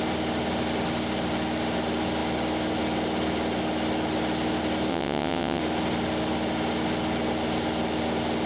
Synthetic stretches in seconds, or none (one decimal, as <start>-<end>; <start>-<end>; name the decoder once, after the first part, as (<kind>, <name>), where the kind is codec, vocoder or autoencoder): 4.9-5.6 (vocoder, WaveNeXt)